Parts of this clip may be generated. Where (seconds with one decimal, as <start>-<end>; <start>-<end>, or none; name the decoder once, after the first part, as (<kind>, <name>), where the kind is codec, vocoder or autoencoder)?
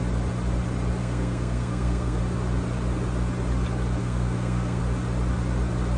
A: 1.0-2.2 (codec, SNAC); 4.0-4.8